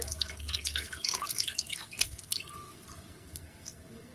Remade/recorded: remade